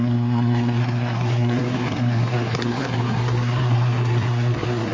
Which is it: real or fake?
fake